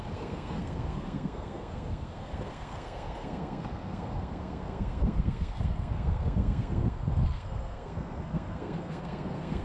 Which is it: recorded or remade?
remade